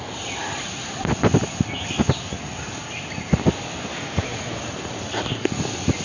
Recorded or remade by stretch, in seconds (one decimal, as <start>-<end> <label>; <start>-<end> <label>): 0.0-3.9 recorded; 3.9-4.6 remade; 4.6-6.0 recorded